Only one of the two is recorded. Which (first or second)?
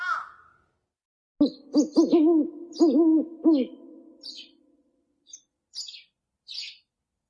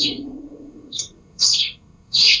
first